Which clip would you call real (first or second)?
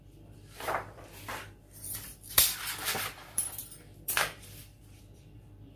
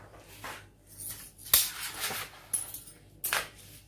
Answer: second